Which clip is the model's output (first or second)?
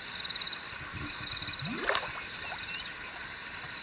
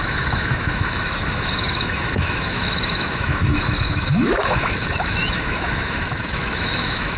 second